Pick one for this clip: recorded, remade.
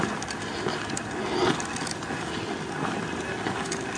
recorded